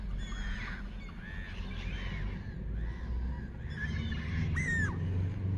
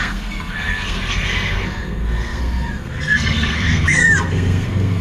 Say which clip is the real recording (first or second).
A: first